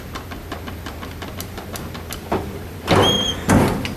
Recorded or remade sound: recorded